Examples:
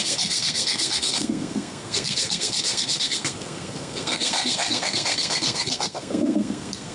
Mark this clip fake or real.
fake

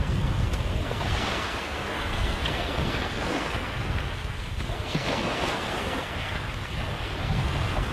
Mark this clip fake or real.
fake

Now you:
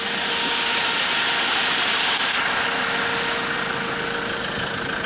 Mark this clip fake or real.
real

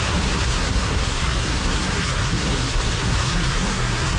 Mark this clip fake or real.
fake